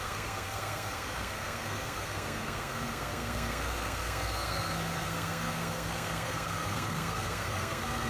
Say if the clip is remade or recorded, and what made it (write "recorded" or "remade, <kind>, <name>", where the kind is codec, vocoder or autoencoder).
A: remade, codec, SNAC